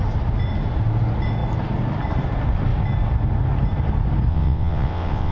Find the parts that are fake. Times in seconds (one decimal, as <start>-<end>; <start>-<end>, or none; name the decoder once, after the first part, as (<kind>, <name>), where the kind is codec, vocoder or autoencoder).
4.3-5.3 (vocoder, WaveNeXt)